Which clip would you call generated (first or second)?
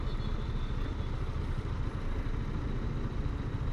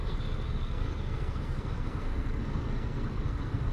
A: second